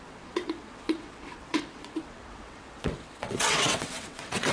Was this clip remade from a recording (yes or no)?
yes